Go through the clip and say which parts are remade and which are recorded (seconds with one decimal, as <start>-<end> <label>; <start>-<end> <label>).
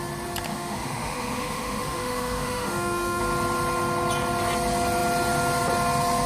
0.0-0.5 recorded; 0.5-3.2 remade; 3.2-6.3 recorded